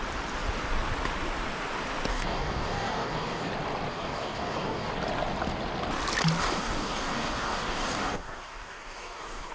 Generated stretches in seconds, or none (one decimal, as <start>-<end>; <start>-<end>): 2.1-3.5; 3.9-4.9; 6.4-9.5